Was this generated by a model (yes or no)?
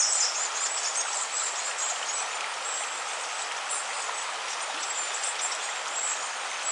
no